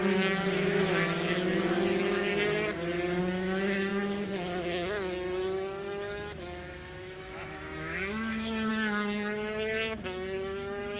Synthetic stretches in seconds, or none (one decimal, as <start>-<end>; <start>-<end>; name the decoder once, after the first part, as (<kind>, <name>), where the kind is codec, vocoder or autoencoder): 0.0-2.3 (autoencoder, DAC-VAE); 3.2-11.0